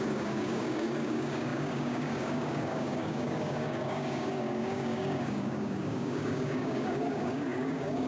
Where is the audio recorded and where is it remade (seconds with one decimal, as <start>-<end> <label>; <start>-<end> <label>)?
0.0-8.1 remade